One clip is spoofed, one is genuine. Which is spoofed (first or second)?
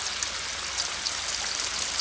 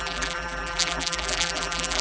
second